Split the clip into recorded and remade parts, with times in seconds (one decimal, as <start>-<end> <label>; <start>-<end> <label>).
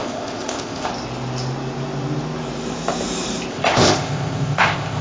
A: 0.0-0.9 remade; 0.9-3.5 recorded; 3.5-5.0 remade